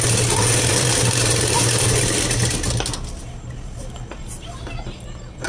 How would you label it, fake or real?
real